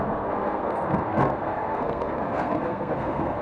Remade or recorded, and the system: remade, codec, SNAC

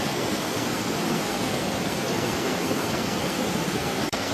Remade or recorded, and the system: remade, codec, SNAC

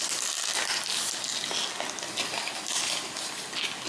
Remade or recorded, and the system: recorded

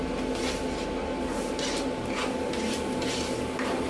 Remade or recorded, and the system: recorded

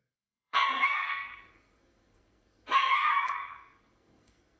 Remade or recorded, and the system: remade, codec, SNAC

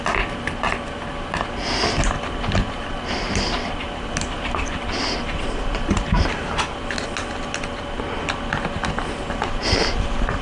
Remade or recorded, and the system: recorded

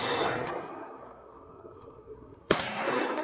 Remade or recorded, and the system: remade, codec, SNAC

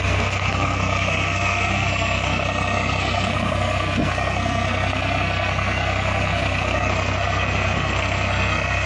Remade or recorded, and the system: remade, codec, SNAC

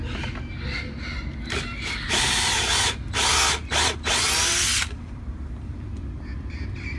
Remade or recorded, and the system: recorded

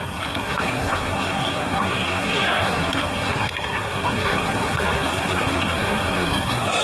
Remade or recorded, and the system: remade, codec, SNAC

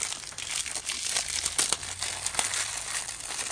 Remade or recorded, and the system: recorded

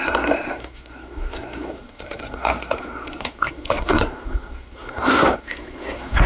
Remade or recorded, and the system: remade, codec, SNAC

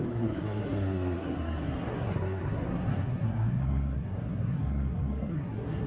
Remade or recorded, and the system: remade, codec, SNAC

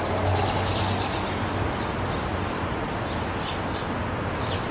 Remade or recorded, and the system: recorded